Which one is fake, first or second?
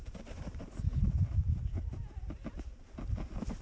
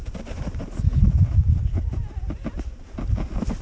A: first